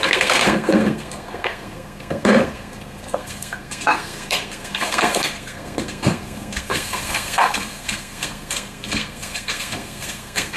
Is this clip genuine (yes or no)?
no